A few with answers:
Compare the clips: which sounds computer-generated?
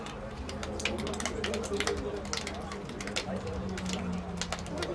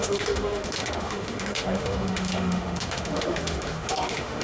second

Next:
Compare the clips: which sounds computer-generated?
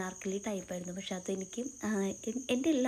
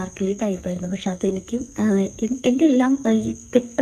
second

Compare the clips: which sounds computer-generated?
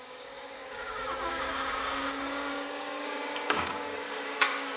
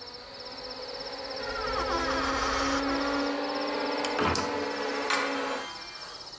first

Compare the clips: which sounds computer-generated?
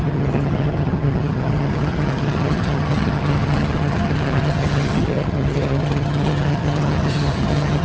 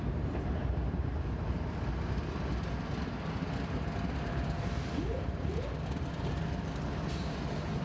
first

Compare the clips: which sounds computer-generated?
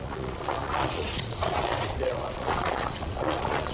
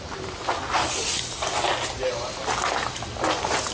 first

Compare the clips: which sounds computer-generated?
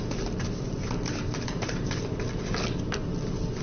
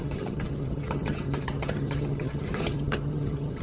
second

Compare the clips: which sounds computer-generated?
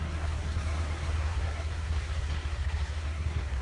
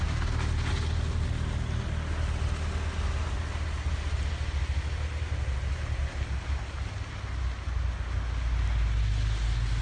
first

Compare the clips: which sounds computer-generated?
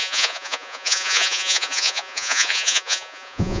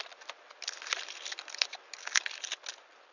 first